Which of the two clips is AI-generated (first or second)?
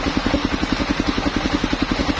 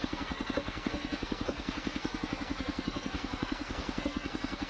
second